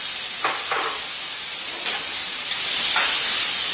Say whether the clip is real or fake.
fake